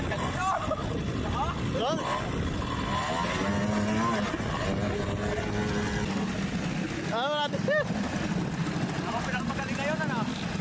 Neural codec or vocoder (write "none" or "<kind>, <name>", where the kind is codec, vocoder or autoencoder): none